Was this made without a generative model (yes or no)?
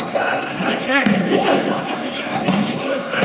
no